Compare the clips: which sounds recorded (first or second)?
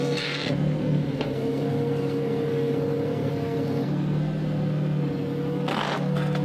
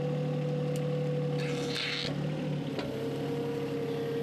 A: second